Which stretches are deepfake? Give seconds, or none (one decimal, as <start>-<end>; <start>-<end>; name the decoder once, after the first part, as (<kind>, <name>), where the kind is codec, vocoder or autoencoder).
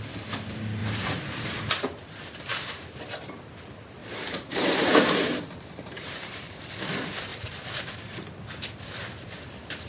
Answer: 0.8-1.7 (vocoder, BigVGAN v2); 2.5-3.0; 4.0-6.6; 7.3-8.0